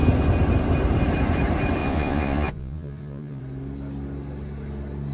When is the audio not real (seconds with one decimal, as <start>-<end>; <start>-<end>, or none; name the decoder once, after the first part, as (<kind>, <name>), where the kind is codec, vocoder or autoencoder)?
1.8-3.4 (vocoder, Vocos)